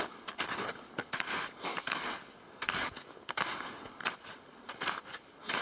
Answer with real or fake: real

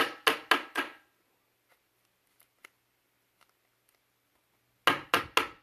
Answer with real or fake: real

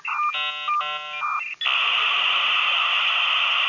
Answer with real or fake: real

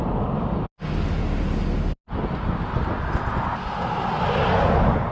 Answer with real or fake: real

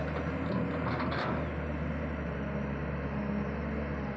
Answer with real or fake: real